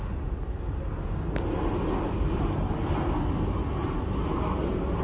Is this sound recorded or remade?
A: recorded